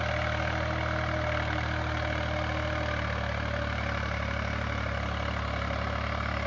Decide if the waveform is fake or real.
real